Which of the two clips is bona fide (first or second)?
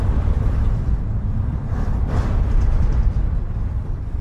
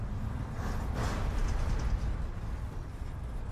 second